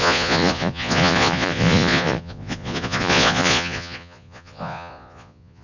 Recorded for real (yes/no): no